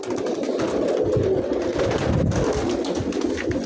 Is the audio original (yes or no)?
yes